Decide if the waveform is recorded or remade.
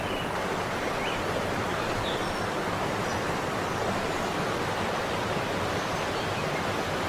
recorded